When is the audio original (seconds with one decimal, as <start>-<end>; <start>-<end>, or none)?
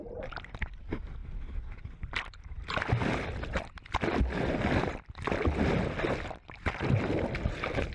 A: 0.0-7.9